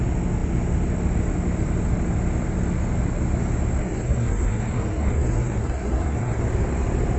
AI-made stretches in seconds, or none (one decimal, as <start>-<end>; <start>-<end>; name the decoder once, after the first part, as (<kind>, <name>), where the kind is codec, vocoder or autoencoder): 3.8-6.4 (codec, SNAC)